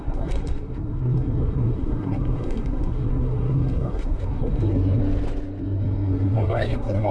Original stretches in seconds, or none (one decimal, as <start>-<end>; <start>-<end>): 5.0-5.6